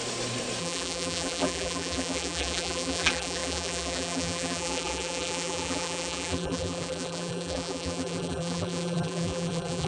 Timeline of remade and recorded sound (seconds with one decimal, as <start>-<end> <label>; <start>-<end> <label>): 0.0-0.6 recorded; 0.6-9.9 remade